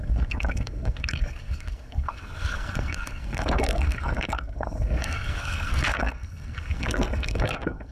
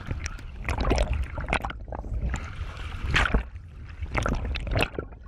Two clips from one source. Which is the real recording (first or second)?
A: second